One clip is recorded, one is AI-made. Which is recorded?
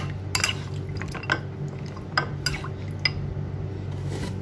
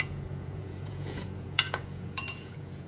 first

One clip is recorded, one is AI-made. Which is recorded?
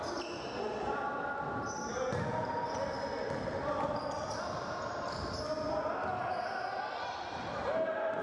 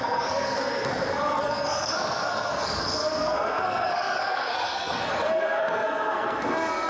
first